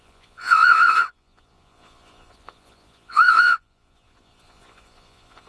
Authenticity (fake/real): fake